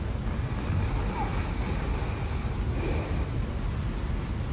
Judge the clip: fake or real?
fake